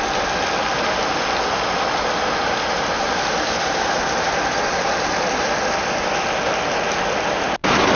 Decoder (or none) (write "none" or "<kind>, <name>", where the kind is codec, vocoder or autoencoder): none